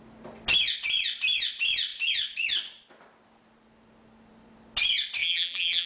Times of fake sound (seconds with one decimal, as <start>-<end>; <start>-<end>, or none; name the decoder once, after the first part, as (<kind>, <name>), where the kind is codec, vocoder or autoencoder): 5.2-5.9 (vocoder, BigVGAN v2)